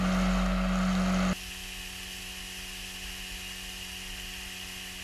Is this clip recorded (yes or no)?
yes